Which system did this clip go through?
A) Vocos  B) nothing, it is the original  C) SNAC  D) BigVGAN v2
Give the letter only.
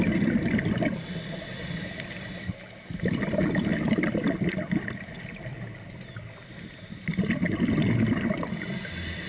B